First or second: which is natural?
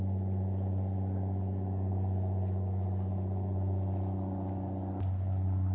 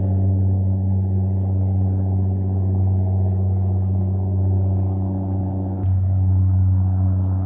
first